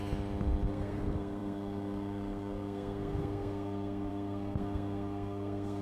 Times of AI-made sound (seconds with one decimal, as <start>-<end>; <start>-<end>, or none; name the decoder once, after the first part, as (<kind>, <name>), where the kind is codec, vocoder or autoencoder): 0.7-5.8 (codec, SNAC)